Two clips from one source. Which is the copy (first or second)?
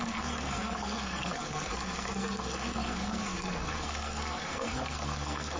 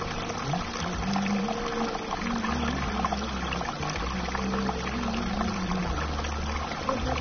first